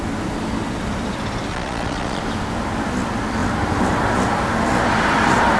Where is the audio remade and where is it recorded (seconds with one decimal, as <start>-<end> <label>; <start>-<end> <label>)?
0.0-1.5 recorded; 1.5-2.2 remade; 2.2-5.6 recorded